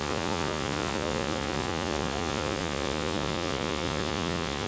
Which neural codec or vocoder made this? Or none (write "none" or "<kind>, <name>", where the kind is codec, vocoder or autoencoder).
vocoder, Vocos